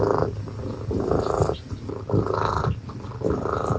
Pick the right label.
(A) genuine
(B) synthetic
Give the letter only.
A